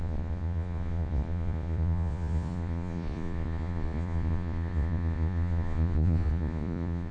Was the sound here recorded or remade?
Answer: remade